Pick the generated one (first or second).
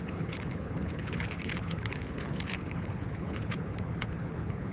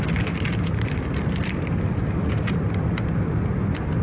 first